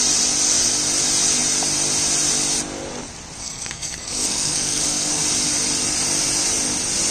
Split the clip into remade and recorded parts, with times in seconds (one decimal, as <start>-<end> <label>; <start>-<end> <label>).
0.0-3.4 recorded; 3.4-5.2 remade; 5.2-7.1 recorded

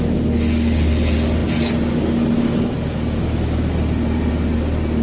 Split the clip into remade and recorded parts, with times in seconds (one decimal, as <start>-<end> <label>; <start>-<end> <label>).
0.0-5.0 recorded

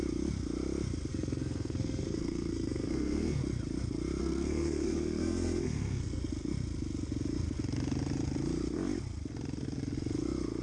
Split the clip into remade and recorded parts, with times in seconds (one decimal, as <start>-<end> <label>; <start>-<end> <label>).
0.0-1.1 recorded; 1.1-3.4 remade; 3.4-4.2 recorded; 4.2-6.2 remade; 6.2-10.6 recorded

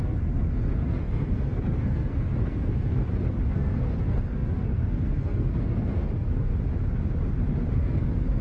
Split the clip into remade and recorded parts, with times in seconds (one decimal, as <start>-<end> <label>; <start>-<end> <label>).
0.0-3.0 remade; 3.0-3.5 recorded; 3.5-6.5 remade; 6.5-7.7 recorded; 7.7-8.4 remade

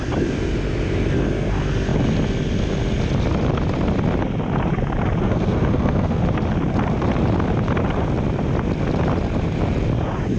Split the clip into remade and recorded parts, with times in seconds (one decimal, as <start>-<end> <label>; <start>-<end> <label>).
0.0-5.2 recorded; 5.2-6.2 remade; 6.2-10.4 recorded